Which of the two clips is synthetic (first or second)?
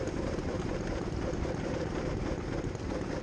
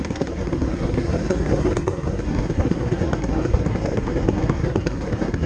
second